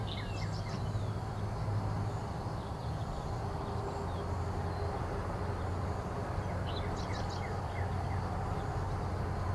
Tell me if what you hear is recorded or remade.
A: recorded